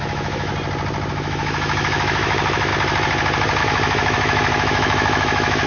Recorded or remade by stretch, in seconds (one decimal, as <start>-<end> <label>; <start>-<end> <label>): 0.0-0.5 remade; 0.5-1.1 recorded; 1.1-2.7 remade; 2.7-3.6 recorded; 3.6-5.7 remade